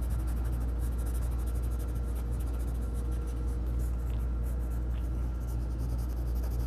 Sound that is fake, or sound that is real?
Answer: real